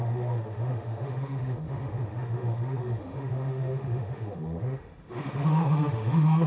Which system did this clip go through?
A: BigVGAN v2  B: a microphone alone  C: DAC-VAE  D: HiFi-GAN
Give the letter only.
C